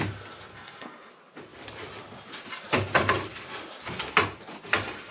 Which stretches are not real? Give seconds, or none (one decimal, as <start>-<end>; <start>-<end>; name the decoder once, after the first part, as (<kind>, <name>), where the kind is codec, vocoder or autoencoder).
0.5-1.1 (codec, SNAC)